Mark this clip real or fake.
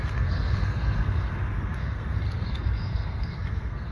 fake